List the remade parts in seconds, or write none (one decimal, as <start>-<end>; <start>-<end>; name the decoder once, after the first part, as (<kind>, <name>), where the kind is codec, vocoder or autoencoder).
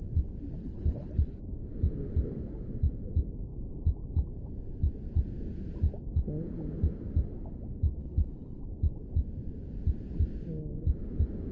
0.6-1.4 (codec, HILCodec); 8.0-8.6